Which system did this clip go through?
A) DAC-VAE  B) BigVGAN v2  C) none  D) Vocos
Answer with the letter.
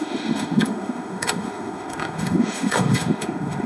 A